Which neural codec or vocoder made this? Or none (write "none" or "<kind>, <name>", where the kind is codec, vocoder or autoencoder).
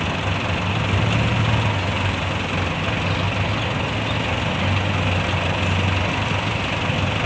none